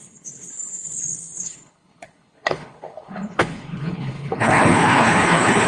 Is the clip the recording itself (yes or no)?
no